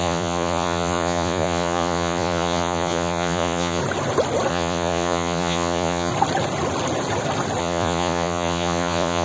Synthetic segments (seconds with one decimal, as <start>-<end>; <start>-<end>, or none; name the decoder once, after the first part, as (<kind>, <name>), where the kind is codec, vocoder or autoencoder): 0.0-3.8 (vocoder, Vocos); 4.5-6.1; 7.6-9.2